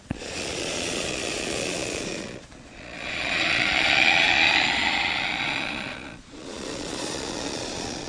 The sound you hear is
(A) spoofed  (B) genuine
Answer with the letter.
A